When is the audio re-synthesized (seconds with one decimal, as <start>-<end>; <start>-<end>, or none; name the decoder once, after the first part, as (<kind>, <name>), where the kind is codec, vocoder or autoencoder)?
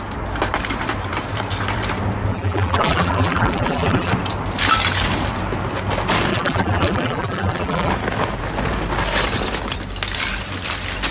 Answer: 2.3-4.1 (vocoder, BigVGAN v2); 6.3-7.9